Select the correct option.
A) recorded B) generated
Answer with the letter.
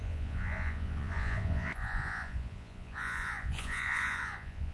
B